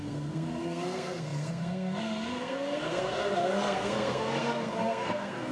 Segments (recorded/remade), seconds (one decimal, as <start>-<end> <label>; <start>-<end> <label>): 0.0-5.5 remade